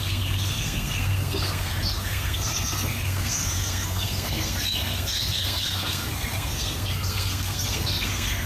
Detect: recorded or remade remade